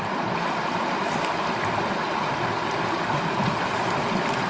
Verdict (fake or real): real